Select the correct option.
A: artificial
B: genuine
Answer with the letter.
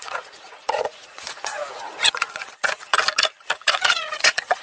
A